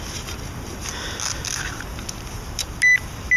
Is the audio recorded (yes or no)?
yes